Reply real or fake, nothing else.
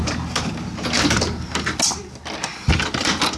real